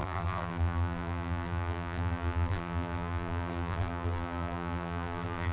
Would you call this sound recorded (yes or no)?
no